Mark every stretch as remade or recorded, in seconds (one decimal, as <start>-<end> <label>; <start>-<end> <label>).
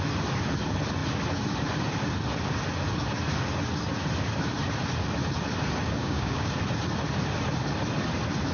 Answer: 0.0-6.0 recorded; 6.0-6.5 remade; 6.5-8.5 recorded